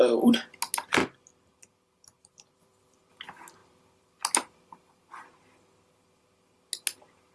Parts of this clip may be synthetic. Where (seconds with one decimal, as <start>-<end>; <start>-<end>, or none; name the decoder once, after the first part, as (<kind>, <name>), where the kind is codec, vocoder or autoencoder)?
1.0-3.1 (vocoder, BigVGAN v2); 3.6-5.1